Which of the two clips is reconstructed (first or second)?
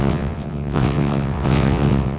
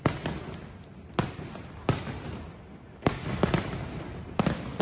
first